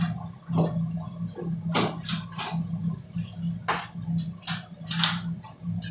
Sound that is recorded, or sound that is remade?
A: recorded